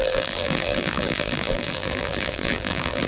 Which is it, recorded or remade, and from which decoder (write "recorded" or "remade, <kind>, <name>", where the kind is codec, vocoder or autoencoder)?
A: remade, vocoder, BigVGAN v2